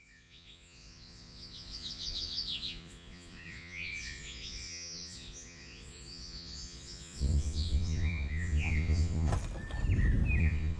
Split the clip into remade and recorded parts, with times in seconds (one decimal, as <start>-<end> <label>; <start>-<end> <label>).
0.0-9.3 remade; 9.3-10.4 recorded; 10.4-10.8 remade